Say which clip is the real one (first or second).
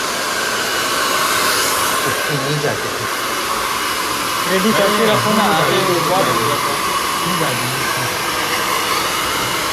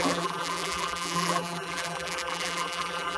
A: first